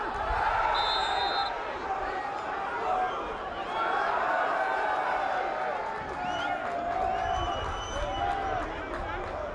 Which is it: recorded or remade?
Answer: recorded